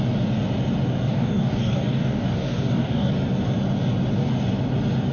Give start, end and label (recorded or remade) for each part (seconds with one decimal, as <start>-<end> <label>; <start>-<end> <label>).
0.0-1.1 recorded; 1.1-3.1 remade; 3.1-5.1 recorded